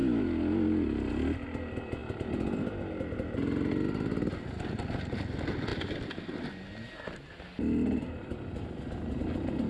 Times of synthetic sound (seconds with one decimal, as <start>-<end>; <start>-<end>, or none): none

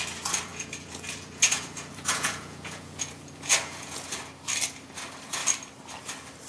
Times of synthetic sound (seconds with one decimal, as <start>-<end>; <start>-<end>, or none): 0.5-4.2

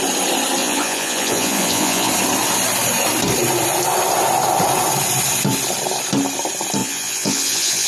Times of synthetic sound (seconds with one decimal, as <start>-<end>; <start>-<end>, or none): 0.6-2.1; 6.8-7.9